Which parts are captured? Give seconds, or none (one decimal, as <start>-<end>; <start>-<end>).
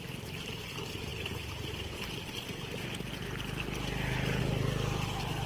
0.0-5.5